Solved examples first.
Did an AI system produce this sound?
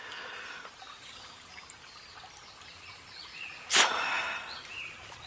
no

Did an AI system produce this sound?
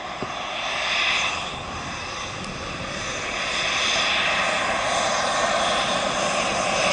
no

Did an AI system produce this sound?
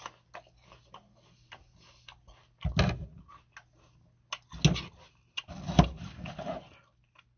no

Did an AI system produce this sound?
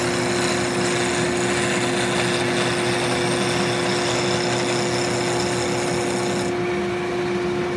no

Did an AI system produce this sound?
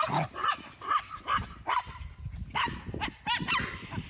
no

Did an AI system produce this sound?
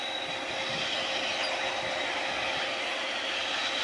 no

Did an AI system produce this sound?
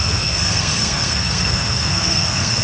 yes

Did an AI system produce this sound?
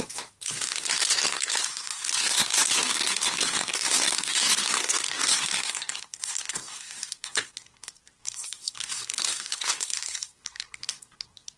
yes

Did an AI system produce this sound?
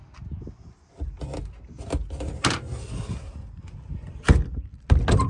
no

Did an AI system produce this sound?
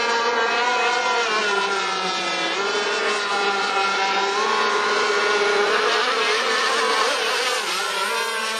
no